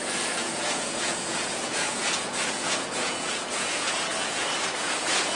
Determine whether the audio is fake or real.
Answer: fake